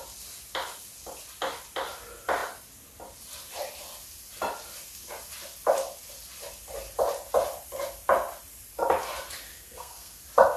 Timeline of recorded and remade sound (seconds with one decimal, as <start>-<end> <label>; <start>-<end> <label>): 0.0-9.5 recorded; 9.5-10.2 remade; 10.2-10.6 recorded